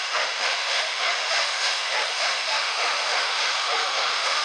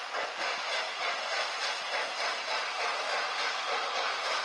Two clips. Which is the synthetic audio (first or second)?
first